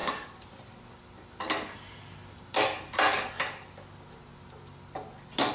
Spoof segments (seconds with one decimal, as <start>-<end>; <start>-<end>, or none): 0.0-3.3

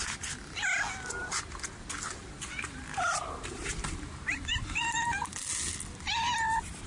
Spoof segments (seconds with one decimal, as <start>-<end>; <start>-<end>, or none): 2.2-5.3

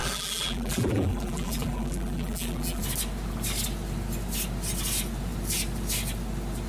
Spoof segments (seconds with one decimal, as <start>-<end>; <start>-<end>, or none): 0.0-2.8

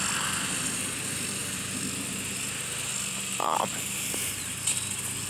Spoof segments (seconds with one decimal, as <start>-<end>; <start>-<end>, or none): none

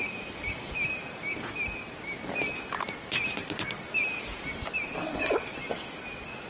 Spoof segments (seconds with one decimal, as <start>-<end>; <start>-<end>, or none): none

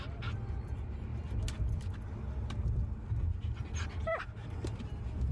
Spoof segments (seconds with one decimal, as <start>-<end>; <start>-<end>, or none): none